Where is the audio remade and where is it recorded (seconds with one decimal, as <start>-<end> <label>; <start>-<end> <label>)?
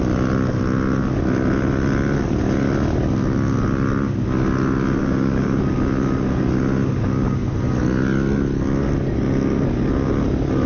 0.0-5.0 recorded; 5.0-5.6 remade; 5.6-10.7 recorded